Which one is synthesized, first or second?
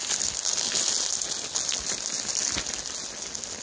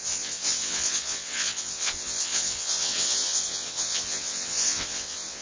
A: second